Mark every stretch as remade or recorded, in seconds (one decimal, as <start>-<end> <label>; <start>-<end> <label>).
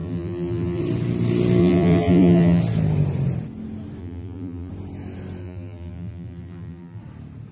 0.0-0.8 remade; 0.8-1.6 recorded; 1.6-2.6 remade; 2.6-4.0 recorded; 4.0-4.7 remade; 4.7-5.4 recorded; 5.4-7.0 remade; 7.0-7.5 recorded